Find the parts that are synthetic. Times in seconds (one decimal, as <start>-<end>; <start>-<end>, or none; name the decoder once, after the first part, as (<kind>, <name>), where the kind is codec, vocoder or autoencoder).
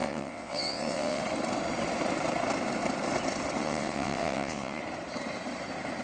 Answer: 0.0-1.2 (vocoder, WaveNeXt); 3.6-4.8